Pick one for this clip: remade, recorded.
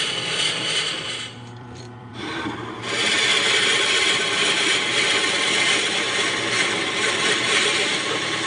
remade